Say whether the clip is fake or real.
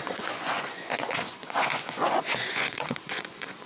fake